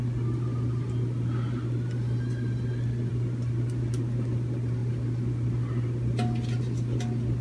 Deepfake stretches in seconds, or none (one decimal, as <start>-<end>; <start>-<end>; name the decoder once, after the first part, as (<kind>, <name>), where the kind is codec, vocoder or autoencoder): none